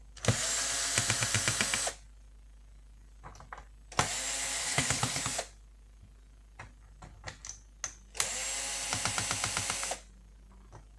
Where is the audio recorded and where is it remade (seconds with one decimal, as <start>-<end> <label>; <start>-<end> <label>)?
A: 0.0-4.6 recorded; 4.6-5.2 remade; 5.2-11.0 recorded